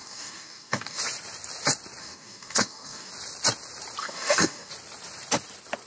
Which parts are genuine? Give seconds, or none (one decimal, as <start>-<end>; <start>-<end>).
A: 1.0-2.0; 3.1-4.0; 4.7-5.9